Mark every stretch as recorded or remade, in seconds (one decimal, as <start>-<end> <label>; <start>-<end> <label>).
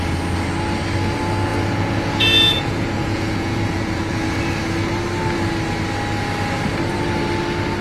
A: 0.0-1.5 recorded; 1.5-4.4 remade; 4.4-7.8 recorded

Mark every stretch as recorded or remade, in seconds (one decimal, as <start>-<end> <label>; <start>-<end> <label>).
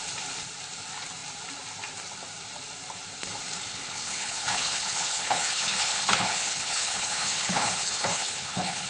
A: 0.0-3.7 recorded; 3.7-8.9 remade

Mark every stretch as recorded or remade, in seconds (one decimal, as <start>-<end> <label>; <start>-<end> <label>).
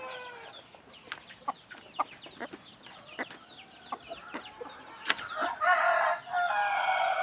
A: 0.0-7.2 recorded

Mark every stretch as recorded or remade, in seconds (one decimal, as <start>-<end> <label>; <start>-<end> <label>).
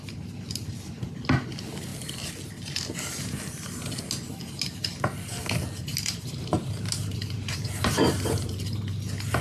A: 0.0-5.9 recorded; 5.9-8.7 remade; 8.7-9.4 recorded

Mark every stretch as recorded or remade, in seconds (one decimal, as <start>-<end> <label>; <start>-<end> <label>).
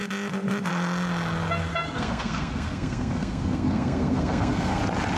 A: 0.0-1.7 recorded; 1.7-4.8 remade; 4.8-5.2 recorded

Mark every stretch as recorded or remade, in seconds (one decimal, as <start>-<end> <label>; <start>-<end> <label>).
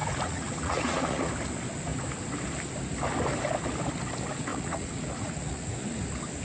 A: 0.0-1.3 remade; 1.3-4.5 recorded; 4.5-5.9 remade; 5.9-6.4 recorded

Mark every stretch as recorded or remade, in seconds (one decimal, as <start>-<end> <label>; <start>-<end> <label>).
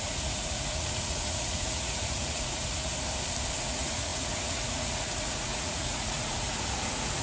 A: 0.0-2.9 remade; 2.9-3.6 recorded; 3.6-7.2 remade